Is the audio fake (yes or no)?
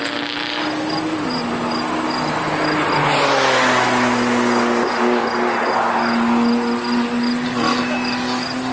no